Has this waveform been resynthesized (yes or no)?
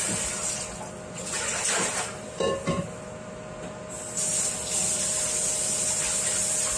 no